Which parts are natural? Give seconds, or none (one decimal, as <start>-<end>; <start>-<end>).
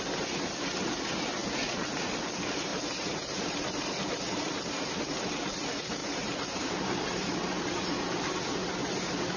0.0-1.4; 2.0-2.7; 5.0-6.0; 8.2-9.4